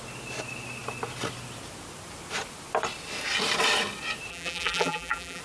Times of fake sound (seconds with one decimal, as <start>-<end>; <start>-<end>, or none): 4.3-5.4

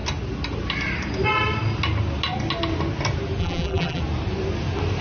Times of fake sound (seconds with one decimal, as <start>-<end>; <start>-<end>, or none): 3.4-4.0